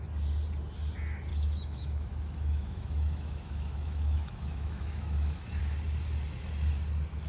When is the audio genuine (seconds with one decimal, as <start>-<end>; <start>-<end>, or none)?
0.0-1.3; 5.6-7.3